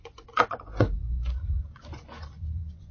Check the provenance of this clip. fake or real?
fake